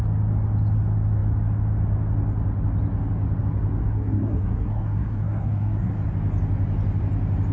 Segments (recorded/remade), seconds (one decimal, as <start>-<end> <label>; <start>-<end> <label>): 0.0-3.8 recorded; 3.8-5.9 remade; 5.9-7.5 recorded